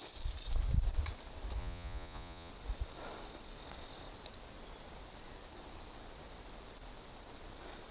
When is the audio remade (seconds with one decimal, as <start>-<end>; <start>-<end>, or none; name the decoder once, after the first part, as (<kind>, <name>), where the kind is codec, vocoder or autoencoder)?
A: 1.6-2.5 (vocoder, Vocos)